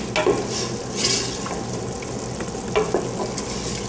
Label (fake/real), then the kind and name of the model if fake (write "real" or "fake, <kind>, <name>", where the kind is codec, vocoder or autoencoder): real